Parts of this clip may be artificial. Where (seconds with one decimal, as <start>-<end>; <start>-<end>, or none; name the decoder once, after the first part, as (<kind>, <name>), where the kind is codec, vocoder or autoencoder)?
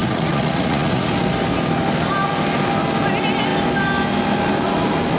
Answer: 0.0-1.1 (vocoder, Vocos)